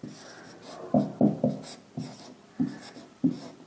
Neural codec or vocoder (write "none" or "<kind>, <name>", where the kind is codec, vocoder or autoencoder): none